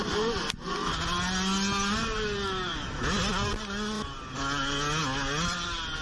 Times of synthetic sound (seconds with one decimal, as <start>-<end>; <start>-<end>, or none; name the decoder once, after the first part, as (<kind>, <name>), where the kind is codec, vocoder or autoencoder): none